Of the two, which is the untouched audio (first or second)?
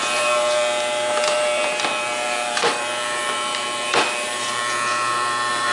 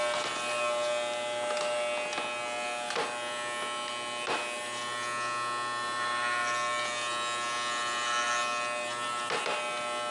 second